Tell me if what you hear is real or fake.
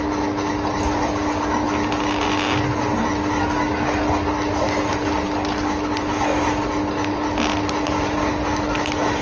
real